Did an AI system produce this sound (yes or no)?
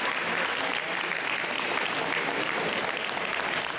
no